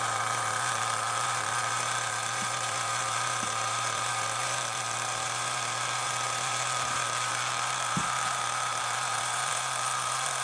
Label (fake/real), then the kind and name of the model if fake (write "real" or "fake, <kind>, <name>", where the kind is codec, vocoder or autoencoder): fake, vocoder, BigVGAN v2